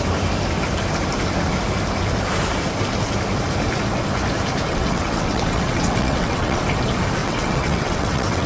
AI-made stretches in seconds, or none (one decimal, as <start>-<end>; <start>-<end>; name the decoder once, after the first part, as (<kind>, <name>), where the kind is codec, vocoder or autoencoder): 4.7-6.6 (vocoder, WaveNeXt); 7.2-8.5